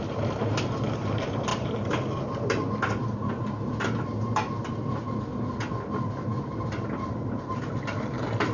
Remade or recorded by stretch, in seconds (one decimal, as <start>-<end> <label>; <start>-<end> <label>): 0.0-8.5 recorded